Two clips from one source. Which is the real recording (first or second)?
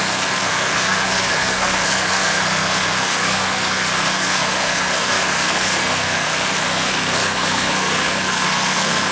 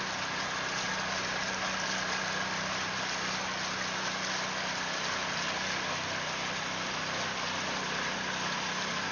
second